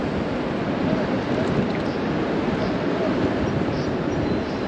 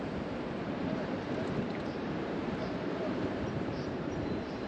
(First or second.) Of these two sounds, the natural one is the first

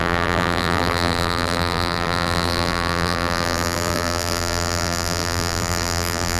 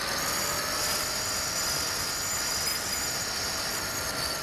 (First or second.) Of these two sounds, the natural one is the second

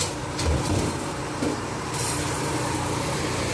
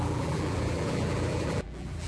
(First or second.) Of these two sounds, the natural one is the first